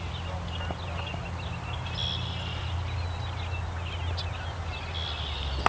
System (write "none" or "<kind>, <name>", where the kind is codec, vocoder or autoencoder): none